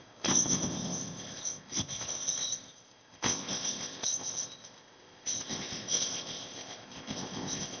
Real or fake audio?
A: fake